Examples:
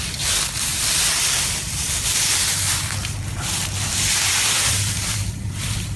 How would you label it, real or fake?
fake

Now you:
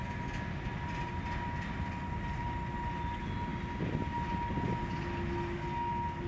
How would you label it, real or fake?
real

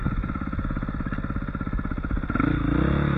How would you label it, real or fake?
real